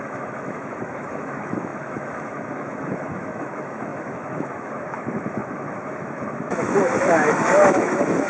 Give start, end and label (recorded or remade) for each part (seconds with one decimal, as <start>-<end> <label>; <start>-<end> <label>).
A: 0.0-8.3 remade